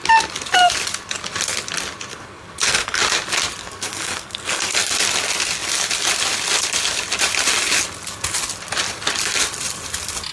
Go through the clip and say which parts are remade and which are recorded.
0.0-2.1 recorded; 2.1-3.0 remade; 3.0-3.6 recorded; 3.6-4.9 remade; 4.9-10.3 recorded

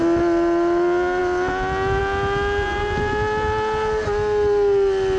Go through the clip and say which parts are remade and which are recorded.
0.0-5.2 recorded

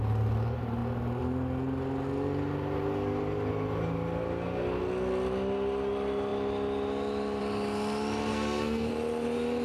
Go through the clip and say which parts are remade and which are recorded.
0.0-8.3 recorded; 8.3-8.9 remade; 8.9-9.6 recorded